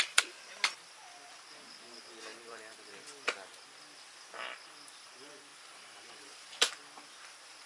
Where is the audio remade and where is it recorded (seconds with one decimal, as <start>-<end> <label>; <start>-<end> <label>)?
0.0-2.3 recorded; 2.3-2.9 remade; 2.9-5.5 recorded; 5.5-6.7 remade; 6.7-7.7 recorded